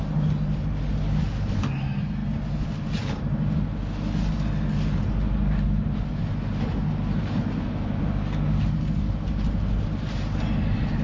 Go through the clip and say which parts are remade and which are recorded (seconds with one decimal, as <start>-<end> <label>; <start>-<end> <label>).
0.0-11.0 recorded